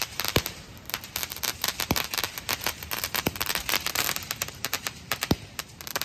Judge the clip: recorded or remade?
remade